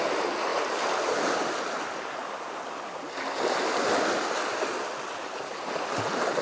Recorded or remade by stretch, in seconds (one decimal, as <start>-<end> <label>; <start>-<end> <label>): 0.0-6.4 recorded